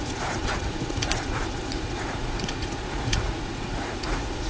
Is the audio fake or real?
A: fake